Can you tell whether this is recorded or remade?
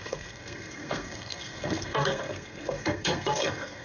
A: remade